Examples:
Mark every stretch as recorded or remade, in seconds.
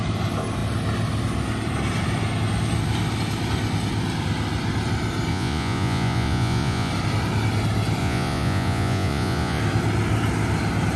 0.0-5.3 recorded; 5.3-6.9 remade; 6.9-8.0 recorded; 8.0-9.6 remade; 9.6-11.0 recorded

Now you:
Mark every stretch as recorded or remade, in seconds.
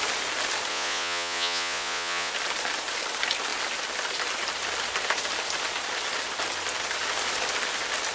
0.0-0.7 recorded; 0.7-2.3 remade; 2.3-8.1 recorded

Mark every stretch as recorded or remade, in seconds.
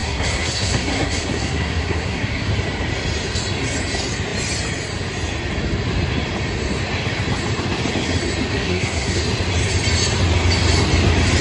0.0-2.5 remade; 2.5-8.5 recorded; 8.5-9.2 remade; 9.2-11.4 recorded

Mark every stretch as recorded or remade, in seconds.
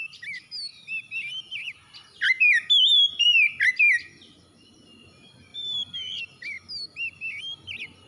0.0-5.5 recorded; 5.5-6.2 remade; 6.2-8.1 recorded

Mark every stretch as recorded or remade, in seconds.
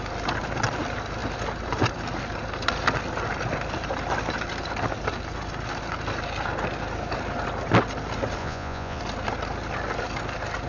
0.0-8.4 recorded; 8.4-9.0 remade; 9.0-10.7 recorded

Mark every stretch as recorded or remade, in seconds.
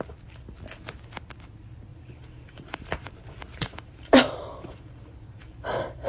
0.0-1.9 recorded; 1.9-3.1 remade; 3.1-3.5 recorded; 3.5-6.1 remade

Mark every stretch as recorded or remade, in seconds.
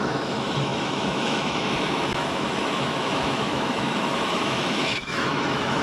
0.0-5.8 remade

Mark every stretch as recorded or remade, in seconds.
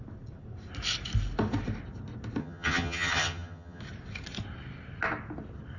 0.0-2.4 recorded; 2.4-3.8 remade; 3.8-5.8 recorded